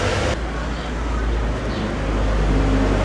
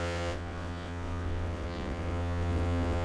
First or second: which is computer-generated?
second